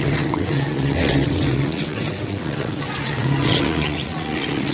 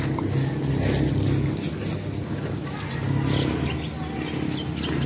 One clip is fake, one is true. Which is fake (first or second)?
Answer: first